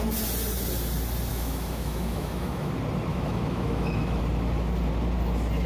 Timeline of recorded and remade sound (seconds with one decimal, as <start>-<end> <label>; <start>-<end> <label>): 0.0-1.3 recorded; 1.3-2.7 remade; 2.7-3.1 recorded; 3.1-4.2 remade; 4.2-5.7 recorded